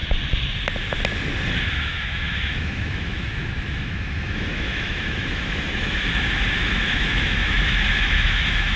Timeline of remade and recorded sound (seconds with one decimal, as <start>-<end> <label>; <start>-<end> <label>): 0.0-1.6 recorded; 1.6-8.8 remade

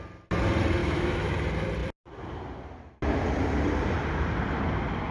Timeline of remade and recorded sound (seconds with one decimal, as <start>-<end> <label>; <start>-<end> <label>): 0.0-0.8 recorded; 0.8-1.3 remade; 1.3-5.1 recorded

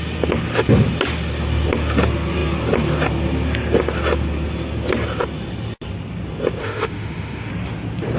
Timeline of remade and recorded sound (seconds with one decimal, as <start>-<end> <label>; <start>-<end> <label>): 0.0-6.6 recorded; 6.6-7.5 remade; 7.5-8.2 recorded

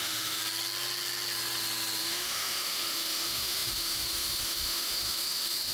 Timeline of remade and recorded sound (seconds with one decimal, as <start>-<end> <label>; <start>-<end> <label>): 0.0-0.4 remade; 0.4-2.0 recorded; 2.0-5.7 remade

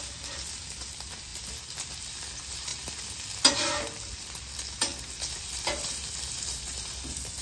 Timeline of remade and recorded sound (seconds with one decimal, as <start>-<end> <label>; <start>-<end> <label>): 0.0-7.4 recorded

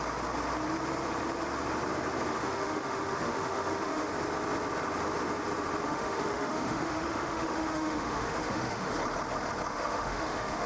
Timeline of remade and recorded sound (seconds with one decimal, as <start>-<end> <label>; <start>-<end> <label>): 0.0-2.3 recorded; 2.3-4.1 remade; 4.1-5.8 recorded; 5.8-8.9 remade; 8.9-9.7 recorded; 9.7-10.7 remade